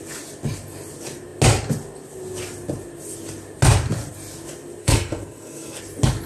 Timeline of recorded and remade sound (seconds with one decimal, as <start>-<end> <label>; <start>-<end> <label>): 0.0-4.8 recorded; 4.8-5.8 remade; 5.8-6.3 recorded

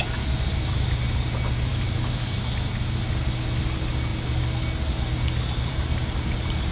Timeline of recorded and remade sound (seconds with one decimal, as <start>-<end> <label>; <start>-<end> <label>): 0.0-6.7 recorded